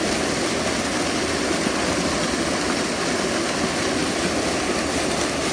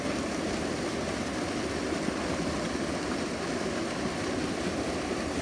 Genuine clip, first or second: first